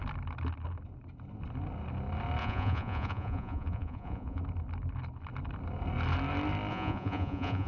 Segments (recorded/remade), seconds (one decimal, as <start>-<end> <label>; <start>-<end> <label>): 0.0-2.4 recorded; 2.4-4.4 remade; 4.4-6.7 recorded; 6.7-7.7 remade